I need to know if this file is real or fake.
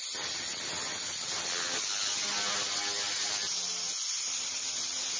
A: real